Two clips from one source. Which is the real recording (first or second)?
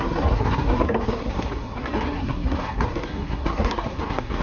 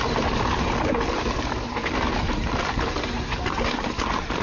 second